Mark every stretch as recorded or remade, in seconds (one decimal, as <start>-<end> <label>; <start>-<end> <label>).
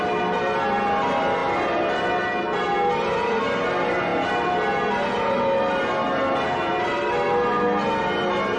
0.0-8.6 recorded